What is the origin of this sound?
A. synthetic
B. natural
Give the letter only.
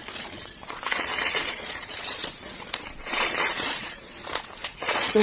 A